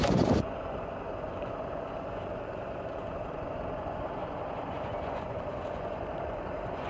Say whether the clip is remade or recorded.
remade